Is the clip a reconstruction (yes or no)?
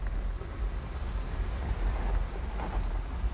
no